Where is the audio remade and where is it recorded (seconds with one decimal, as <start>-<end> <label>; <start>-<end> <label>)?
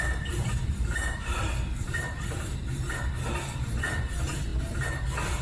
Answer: 0.0-2.6 remade; 2.6-3.7 recorded; 3.7-4.5 remade; 4.5-5.4 recorded